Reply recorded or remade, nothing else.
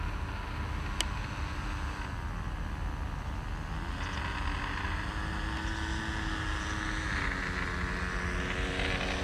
recorded